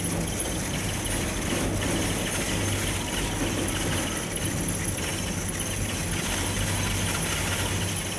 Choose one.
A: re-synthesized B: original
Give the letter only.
B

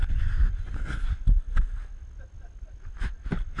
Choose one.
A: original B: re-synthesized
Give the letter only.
A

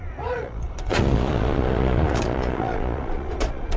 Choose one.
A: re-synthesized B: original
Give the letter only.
A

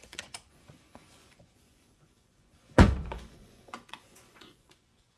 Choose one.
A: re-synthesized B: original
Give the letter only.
A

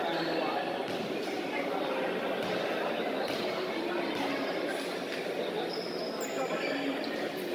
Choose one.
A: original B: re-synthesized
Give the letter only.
A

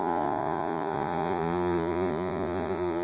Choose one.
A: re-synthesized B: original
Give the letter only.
A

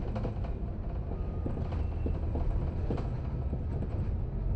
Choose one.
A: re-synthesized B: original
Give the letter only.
B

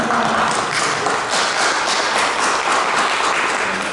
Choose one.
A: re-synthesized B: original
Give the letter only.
B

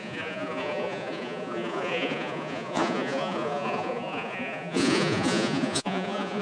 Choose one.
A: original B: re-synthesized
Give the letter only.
B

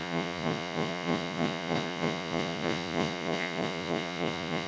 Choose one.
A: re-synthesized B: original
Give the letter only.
A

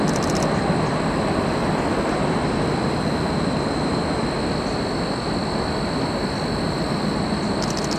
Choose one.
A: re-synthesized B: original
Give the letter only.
B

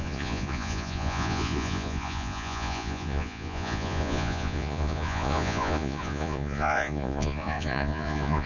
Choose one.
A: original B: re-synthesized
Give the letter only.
B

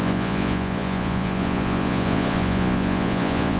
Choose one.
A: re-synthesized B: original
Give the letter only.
A